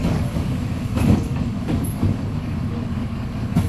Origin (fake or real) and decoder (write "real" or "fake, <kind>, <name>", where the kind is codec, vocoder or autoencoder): fake, codec, DAC